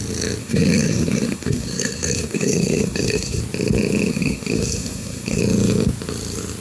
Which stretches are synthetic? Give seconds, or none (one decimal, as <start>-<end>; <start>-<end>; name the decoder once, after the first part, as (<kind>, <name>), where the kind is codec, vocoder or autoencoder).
0.4-3.4 (codec, SNAC); 4.1-5.4